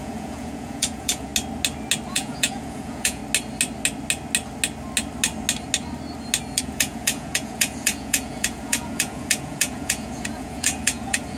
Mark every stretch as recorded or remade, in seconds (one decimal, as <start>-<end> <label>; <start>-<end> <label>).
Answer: 0.0-1.3 remade; 1.3-2.1 recorded; 2.1-3.2 remade; 3.2-6.6 recorded; 6.6-11.4 remade

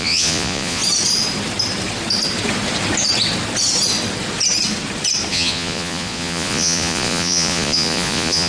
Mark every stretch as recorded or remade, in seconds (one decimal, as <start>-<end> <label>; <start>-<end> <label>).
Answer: 0.0-0.8 remade; 0.8-5.3 recorded; 5.3-8.5 remade

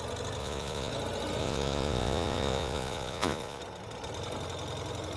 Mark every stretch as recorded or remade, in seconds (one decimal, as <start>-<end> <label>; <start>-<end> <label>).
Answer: 0.0-0.4 recorded; 0.4-0.9 remade; 0.9-1.4 recorded; 1.4-3.6 remade; 3.6-5.2 recorded

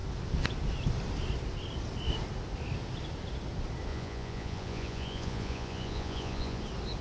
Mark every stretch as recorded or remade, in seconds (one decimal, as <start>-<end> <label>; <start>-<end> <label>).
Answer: 0.0-3.9 recorded; 3.9-6.6 remade; 6.6-7.0 recorded

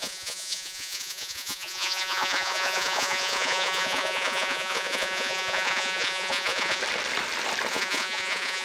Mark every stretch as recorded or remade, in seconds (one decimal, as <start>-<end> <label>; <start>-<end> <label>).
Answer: 0.0-6.8 remade; 6.8-7.7 recorded; 7.7-8.6 remade